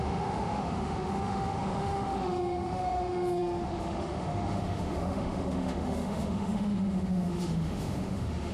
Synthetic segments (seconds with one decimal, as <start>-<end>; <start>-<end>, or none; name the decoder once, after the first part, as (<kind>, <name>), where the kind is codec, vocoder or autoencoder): 0.0-8.5 (autoencoder, DAC-VAE)